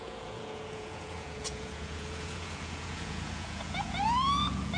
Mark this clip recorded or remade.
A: remade